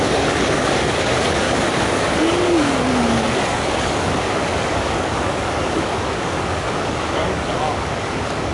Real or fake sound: fake